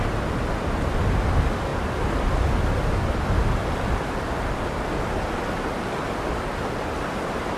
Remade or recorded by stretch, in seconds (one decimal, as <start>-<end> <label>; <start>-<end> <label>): 0.0-7.6 recorded